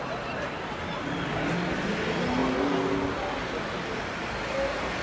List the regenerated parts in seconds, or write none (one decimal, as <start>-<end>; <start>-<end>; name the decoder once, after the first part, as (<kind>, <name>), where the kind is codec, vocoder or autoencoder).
none